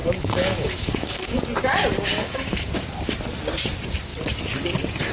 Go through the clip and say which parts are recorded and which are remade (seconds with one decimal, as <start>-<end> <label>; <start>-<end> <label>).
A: 0.0-1.4 remade; 1.4-2.2 recorded; 2.2-2.7 remade; 2.7-5.1 recorded